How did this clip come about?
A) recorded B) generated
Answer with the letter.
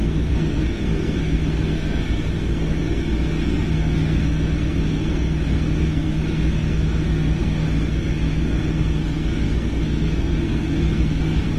B